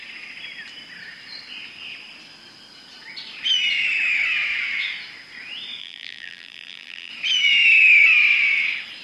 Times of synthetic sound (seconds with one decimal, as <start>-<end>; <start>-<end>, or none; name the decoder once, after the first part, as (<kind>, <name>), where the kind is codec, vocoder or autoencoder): 5.8-7.1 (vocoder, BigVGAN v2)